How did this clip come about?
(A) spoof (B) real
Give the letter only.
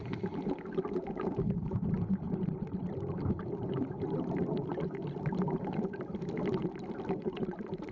A